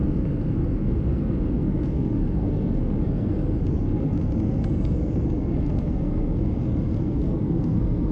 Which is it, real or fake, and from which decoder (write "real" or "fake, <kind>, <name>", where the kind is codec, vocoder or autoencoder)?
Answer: fake, codec, SNAC